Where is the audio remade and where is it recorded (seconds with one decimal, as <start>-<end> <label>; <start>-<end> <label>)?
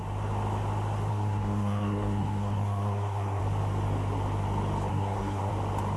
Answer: 0.0-1.1 recorded; 1.1-3.4 remade; 3.4-4.9 recorded; 4.9-5.5 remade; 5.5-6.0 recorded